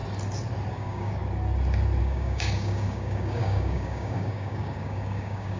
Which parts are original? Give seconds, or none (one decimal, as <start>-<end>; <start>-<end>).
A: 0.0-0.7; 1.2-2.0